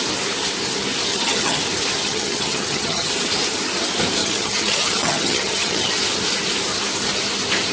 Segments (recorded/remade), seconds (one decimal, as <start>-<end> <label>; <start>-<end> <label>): 0.0-1.1 recorded; 1.1-1.6 remade; 1.6-2.0 recorded; 2.0-3.1 remade; 3.1-4.2 recorded; 4.2-5.9 remade; 5.9-7.7 recorded